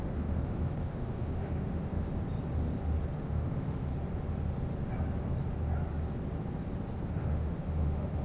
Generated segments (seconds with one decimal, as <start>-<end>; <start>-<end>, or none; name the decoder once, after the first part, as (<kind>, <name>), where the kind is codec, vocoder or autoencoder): 0.0-2.1 (autoencoder, DAC-VAE); 3.0-3.9; 7.1-8.2